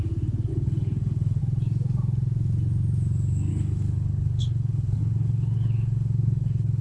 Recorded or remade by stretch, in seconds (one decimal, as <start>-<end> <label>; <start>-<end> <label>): 0.0-0.5 recorded; 0.5-1.4 remade; 1.4-3.5 recorded; 3.5-6.8 remade